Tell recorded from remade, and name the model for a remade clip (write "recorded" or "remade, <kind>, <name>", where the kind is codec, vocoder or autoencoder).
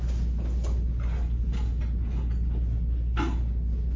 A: recorded